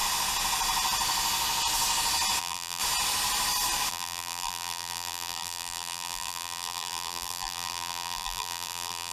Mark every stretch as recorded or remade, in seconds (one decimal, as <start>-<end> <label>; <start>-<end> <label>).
0.0-2.4 recorded; 2.4-2.8 remade; 2.8-3.9 recorded; 3.9-9.1 remade